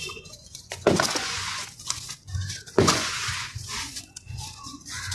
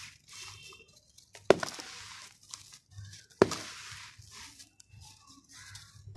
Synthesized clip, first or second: first